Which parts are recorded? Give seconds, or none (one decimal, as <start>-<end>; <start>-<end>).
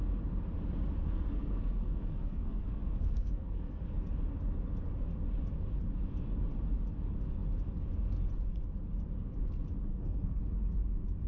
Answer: 0.0-1.0; 3.8-9.9; 10.4-11.3